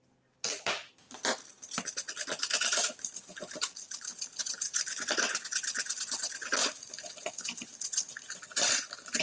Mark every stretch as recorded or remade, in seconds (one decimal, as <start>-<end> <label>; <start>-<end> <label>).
0.0-9.2 recorded